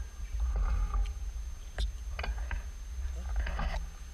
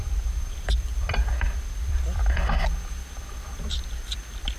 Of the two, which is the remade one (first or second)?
second